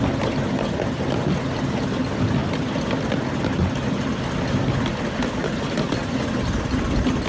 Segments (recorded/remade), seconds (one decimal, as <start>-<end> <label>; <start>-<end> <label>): 0.0-7.3 recorded